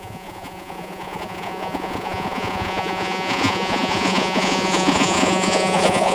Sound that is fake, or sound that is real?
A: fake